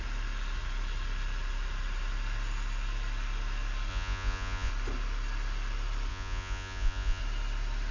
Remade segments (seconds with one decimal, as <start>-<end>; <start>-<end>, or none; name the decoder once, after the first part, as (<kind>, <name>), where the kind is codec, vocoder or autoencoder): 3.9-4.7 (vocoder, Vocos); 6.1-7.2